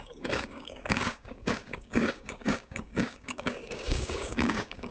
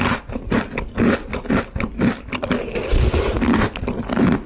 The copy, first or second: first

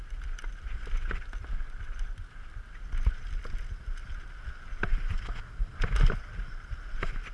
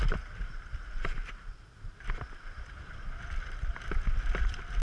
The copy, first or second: second